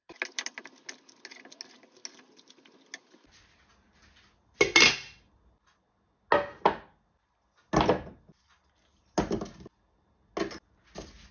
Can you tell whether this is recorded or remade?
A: recorded